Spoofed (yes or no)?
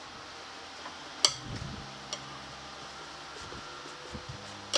no